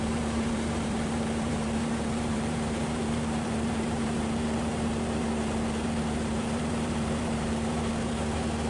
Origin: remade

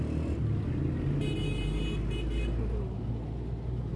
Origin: recorded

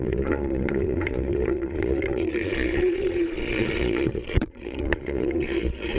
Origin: remade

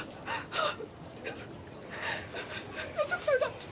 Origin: recorded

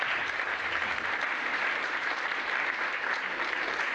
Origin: remade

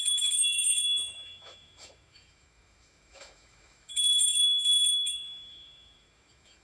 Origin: remade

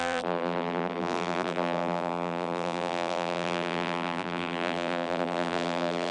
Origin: remade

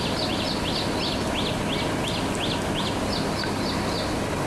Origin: recorded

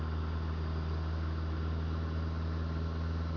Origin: recorded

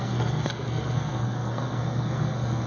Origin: remade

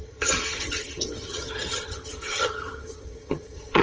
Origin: remade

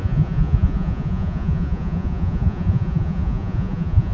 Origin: remade